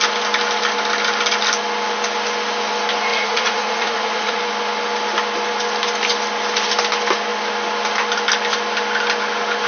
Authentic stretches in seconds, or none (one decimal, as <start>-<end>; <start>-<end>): 0.0-3.1; 4.4-9.7